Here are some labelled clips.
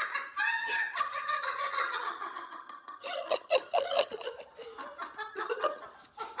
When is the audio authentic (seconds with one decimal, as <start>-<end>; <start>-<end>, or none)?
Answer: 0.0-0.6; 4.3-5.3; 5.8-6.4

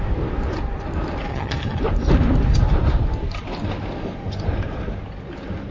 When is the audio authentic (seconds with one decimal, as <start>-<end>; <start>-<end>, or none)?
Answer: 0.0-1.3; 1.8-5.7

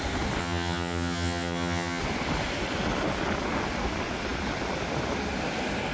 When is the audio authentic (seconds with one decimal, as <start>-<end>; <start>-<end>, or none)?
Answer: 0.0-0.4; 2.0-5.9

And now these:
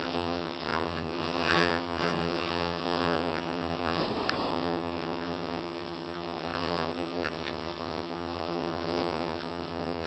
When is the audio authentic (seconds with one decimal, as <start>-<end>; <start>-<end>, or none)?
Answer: 4.0-4.5

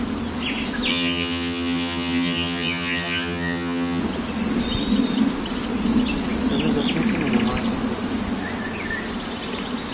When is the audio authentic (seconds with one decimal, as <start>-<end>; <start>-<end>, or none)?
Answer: 0.0-0.9; 4.0-9.9